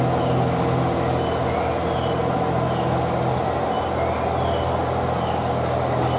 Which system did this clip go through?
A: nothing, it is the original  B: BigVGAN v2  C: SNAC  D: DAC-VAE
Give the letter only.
A